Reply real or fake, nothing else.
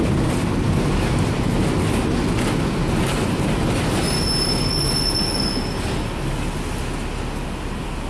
real